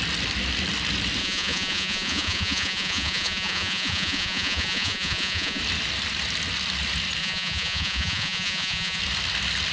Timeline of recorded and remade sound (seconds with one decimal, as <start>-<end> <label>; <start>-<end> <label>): 0.0-1.2 recorded; 1.2-5.6 remade; 5.6-7.2 recorded; 7.2-9.0 remade; 9.0-9.7 recorded